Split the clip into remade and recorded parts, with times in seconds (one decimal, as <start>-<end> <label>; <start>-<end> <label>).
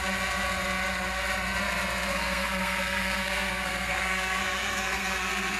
0.0-2.1 recorded; 2.1-5.6 remade